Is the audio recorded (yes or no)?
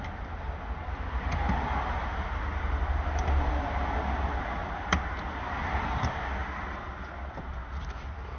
yes